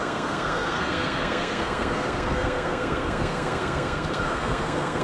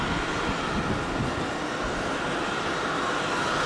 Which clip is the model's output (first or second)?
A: first